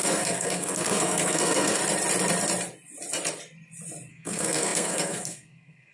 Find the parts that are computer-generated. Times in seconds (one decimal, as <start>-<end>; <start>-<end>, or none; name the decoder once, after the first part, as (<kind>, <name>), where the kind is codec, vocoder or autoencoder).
0.0-1.8 (codec, SNAC); 4.1-5.9